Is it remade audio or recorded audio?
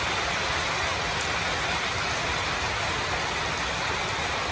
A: recorded